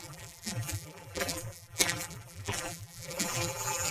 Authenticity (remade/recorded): remade